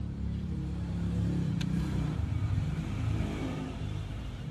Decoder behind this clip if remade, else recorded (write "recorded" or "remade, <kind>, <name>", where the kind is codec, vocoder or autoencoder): remade, vocoder, BigVGAN v2